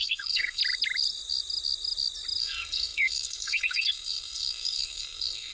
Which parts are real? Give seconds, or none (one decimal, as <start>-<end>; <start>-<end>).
0.6-2.4